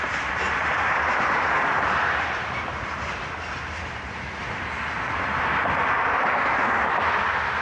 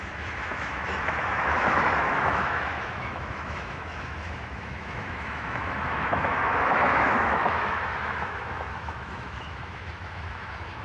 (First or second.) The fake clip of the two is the second